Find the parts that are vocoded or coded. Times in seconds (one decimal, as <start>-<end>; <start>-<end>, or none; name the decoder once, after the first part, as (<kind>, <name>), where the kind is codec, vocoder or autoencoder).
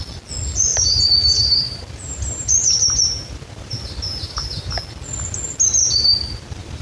0.7-4.8 (vocoder, BigVGAN v2); 5.8-6.8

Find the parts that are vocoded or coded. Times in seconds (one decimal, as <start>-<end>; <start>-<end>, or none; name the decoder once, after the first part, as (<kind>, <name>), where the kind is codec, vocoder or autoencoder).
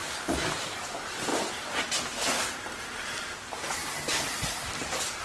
0.6-1.3 (vocoder, BigVGAN v2); 4.4-5.2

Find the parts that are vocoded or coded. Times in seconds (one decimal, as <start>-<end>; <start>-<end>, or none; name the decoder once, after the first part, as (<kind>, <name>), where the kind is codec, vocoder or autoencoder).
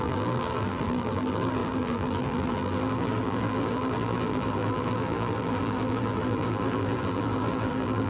0.0-8.1 (vocoder, BigVGAN v2)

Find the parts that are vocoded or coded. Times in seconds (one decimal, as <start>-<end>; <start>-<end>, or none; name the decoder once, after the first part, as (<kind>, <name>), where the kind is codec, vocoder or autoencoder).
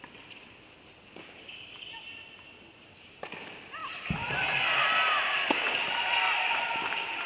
0.0-3.8 (vocoder, BigVGAN v2); 5.9-7.3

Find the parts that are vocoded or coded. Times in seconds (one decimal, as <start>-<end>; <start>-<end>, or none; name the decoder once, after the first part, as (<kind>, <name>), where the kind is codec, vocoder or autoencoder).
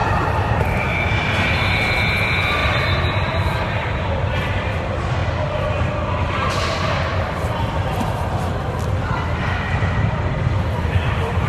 0.0-0.6 (vocoder, BigVGAN v2); 2.6-4.0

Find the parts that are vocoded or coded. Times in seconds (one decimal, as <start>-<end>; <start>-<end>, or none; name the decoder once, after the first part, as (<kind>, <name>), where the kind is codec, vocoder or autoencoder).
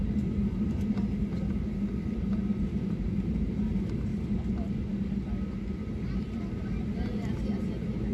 0.0-4.1 (vocoder, BigVGAN v2); 6.0-8.1